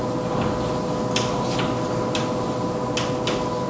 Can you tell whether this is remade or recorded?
recorded